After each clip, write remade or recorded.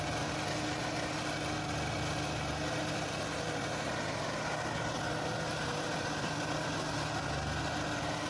recorded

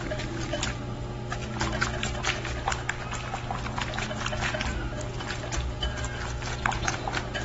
recorded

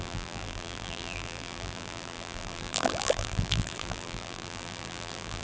remade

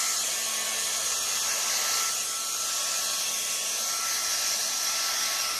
recorded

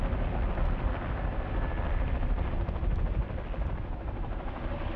remade